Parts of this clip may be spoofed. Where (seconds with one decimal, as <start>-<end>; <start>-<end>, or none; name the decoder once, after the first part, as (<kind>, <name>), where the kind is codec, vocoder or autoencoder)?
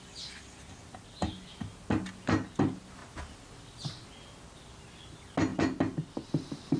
none